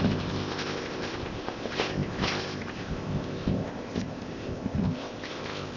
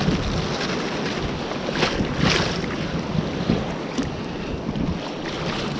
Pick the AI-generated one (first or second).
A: first